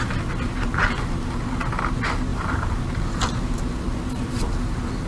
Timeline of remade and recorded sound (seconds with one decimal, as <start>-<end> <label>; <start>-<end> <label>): 0.0-2.3 recorded; 2.3-2.8 remade; 2.8-5.1 recorded